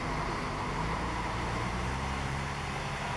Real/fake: fake